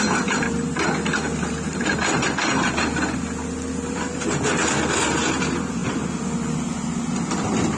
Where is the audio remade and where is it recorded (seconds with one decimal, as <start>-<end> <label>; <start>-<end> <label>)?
0.0-7.8 recorded